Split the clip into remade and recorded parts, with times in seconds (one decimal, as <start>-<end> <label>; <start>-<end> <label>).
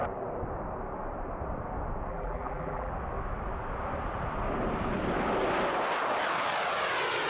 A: 0.0-2.1 recorded; 2.1-2.9 remade; 2.9-7.3 recorded